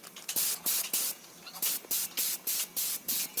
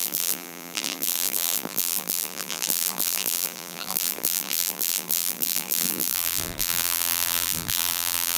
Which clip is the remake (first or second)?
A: second